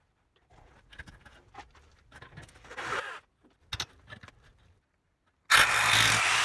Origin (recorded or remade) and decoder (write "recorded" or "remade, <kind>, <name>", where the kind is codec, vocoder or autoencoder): recorded